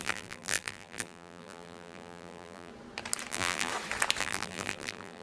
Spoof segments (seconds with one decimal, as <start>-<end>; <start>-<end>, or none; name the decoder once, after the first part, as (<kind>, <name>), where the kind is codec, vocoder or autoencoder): 0.0-2.7 (vocoder, BigVGAN v2); 3.3-3.7; 4.2-5.2

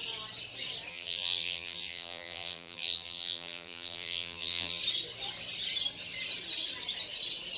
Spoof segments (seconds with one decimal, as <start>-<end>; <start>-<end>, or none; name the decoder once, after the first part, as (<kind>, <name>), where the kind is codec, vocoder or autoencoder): 0.9-4.8 (vocoder, BigVGAN v2)

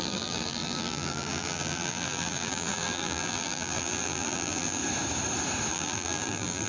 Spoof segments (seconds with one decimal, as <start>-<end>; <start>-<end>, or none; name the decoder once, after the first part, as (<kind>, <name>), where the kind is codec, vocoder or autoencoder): 0.0-4.8 (vocoder, BigVGAN v2); 5.7-6.7

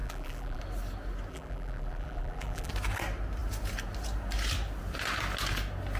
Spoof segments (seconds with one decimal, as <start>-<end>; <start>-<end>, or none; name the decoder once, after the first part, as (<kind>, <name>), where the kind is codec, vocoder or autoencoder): 0.0-0.6 (vocoder, BigVGAN v2); 1.3-2.7